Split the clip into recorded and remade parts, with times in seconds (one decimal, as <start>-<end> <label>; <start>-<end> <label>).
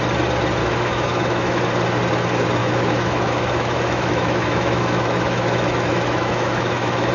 0.0-0.6 recorded; 0.6-1.6 remade; 1.6-2.6 recorded; 2.6-7.1 remade